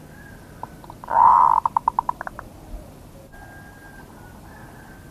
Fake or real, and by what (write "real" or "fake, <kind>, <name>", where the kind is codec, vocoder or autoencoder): real